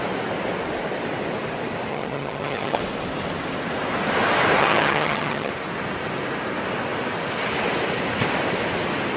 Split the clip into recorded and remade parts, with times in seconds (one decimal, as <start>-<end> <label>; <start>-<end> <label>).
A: 0.0-1.9 recorded; 1.9-2.8 remade; 2.8-4.6 recorded; 4.6-5.5 remade; 5.5-9.2 recorded